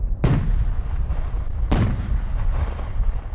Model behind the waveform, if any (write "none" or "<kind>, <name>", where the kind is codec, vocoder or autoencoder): none